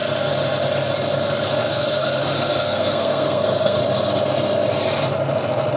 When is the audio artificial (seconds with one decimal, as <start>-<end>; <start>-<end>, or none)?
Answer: 1.7-3.8